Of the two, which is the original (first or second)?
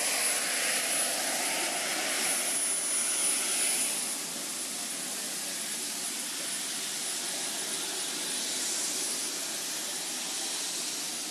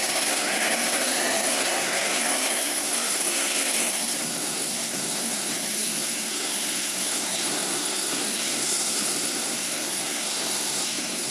first